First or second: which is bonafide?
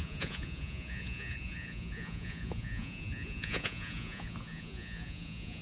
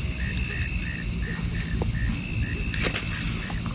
second